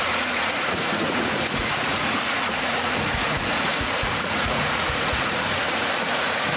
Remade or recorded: remade